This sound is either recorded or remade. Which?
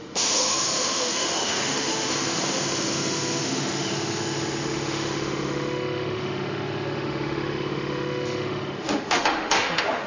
remade